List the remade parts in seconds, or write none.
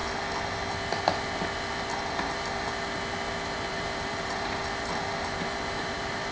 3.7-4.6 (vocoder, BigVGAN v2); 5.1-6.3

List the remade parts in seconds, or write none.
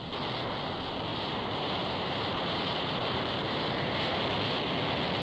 1.1-4.2 (vocoder, BigVGAN v2)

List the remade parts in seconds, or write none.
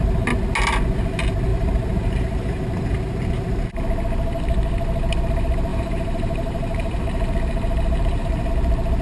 1.5-2.6 (vocoder, BigVGAN v2); 5.7-8.5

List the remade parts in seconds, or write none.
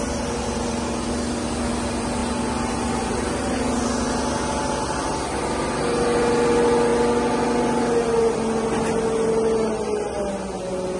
none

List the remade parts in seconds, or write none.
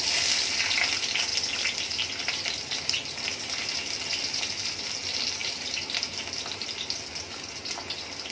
5.4-6.2 (vocoder, BigVGAN v2)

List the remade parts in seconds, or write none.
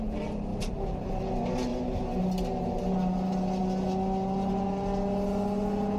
0.5-1.1 (vocoder, BigVGAN v2); 1.7-2.2